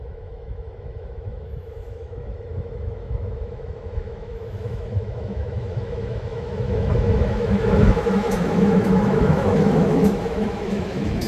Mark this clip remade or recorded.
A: remade